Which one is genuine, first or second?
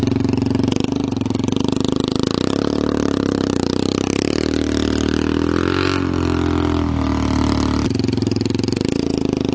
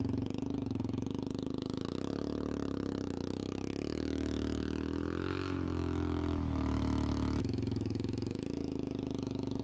first